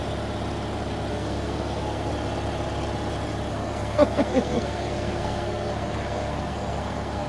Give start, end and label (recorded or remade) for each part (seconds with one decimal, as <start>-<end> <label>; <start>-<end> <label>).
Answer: 0.0-1.1 recorded; 1.1-2.1 remade; 2.1-3.5 recorded; 3.5-7.3 remade